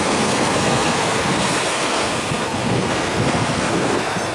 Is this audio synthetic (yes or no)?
yes